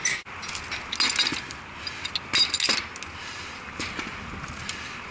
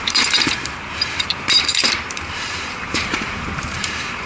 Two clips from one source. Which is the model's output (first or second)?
second